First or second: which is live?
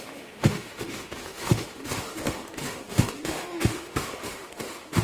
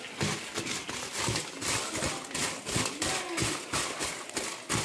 second